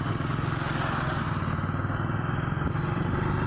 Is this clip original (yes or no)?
yes